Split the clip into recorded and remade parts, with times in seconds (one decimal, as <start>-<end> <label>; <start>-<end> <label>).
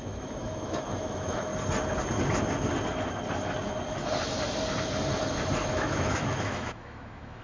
0.0-1.5 remade; 1.5-5.7 recorded; 5.7-7.4 remade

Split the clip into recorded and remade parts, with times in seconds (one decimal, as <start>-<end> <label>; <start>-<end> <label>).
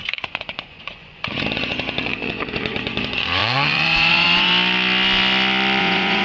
0.0-4.5 remade; 4.5-5.8 recorded; 5.8-6.2 remade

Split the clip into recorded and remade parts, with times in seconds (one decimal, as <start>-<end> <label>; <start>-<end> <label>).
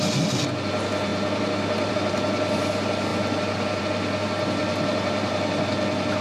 0.0-4.6 recorded; 4.6-5.4 remade; 5.4-6.2 recorded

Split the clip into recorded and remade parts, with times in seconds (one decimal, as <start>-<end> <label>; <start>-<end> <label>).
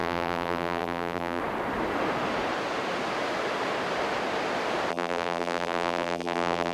0.0-1.4 remade; 1.4-4.9 recorded; 4.9-6.7 remade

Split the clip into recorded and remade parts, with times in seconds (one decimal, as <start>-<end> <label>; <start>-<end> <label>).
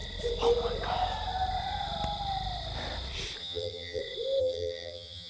0.0-3.4 recorded; 3.4-4.0 remade; 4.0-4.4 recorded; 4.4-5.3 remade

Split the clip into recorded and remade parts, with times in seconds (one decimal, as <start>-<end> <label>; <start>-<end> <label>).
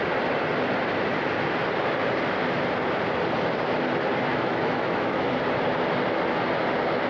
0.0-4.3 recorded; 4.3-5.3 remade; 5.3-7.1 recorded